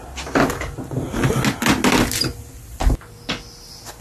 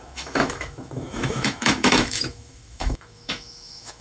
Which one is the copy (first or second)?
second